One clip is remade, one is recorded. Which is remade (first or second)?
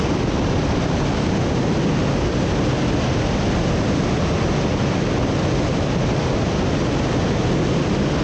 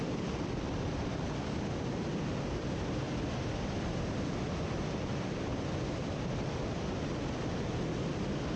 second